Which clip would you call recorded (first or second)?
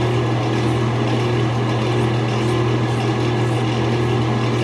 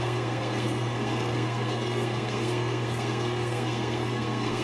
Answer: first